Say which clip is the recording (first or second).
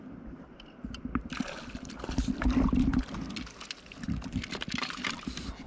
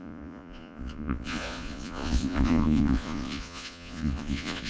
first